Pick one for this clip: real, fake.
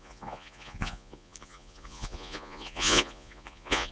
fake